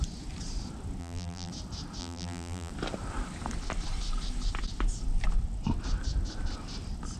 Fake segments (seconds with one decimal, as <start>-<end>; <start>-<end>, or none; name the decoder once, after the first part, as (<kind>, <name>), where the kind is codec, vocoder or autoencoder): 1.0-1.5 (vocoder, BigVGAN v2); 2.0-2.7